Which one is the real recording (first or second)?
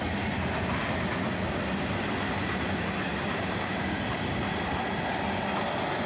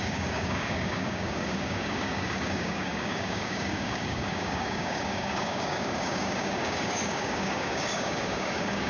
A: first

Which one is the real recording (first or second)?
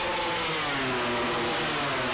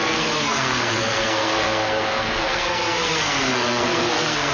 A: first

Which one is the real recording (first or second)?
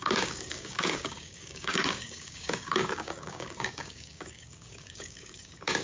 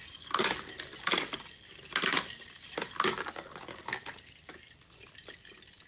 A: second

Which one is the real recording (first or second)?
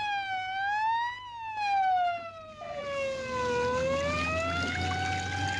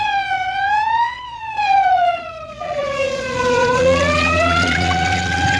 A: first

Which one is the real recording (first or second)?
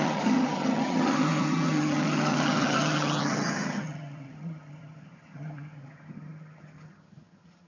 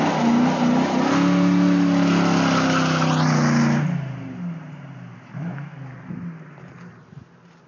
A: second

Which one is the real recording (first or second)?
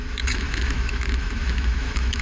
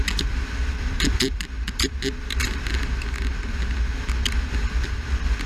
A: second